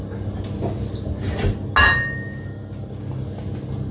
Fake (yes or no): no